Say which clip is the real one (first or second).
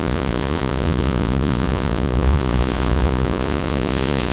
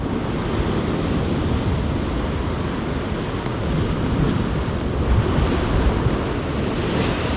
second